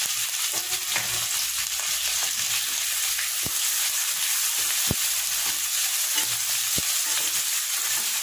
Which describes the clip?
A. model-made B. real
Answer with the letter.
B